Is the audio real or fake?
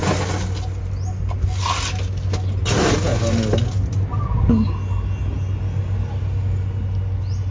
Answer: real